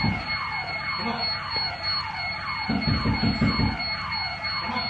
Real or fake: real